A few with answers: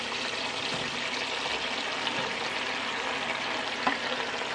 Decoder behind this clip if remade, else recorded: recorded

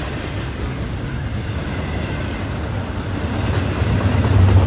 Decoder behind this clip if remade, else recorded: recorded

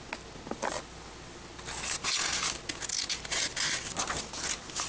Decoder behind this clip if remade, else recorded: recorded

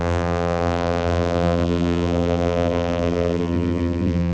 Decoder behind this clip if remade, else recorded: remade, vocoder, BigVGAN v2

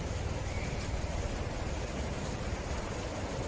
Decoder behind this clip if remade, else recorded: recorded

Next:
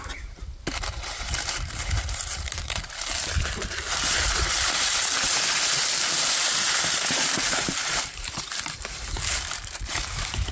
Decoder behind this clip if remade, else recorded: remade, vocoder, BigVGAN v2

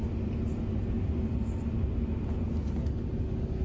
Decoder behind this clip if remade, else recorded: recorded